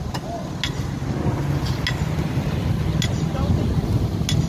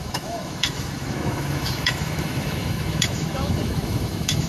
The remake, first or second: second